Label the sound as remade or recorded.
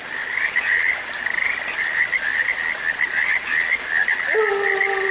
recorded